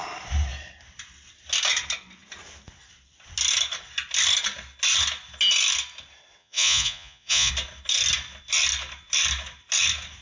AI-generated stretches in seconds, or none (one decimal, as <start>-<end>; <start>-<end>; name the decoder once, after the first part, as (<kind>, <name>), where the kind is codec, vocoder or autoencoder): 6.4-7.5 (vocoder, Vocos)